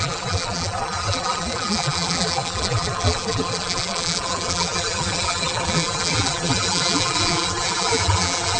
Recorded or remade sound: remade